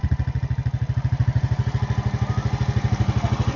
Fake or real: real